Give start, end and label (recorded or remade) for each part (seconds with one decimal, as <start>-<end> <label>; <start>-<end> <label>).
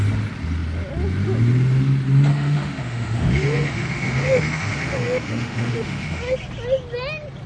0.0-2.3 recorded; 2.3-6.2 remade; 6.2-7.5 recorded